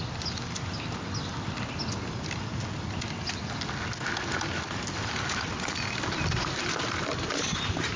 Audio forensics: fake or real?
real